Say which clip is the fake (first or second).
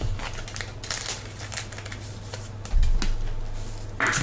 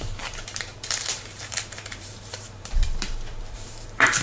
second